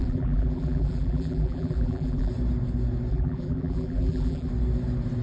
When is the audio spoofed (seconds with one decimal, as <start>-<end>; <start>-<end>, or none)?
0.0-2.3; 3.1-4.5